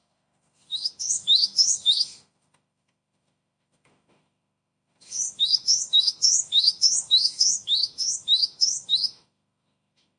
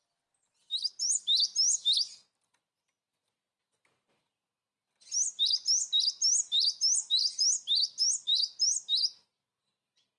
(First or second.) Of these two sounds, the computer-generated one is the first